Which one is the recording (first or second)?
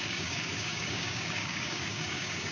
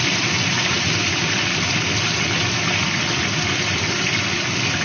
second